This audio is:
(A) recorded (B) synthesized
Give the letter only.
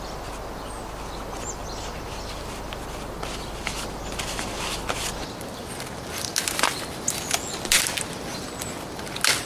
A